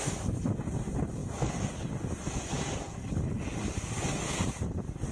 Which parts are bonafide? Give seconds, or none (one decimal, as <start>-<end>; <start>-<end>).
0.0-5.1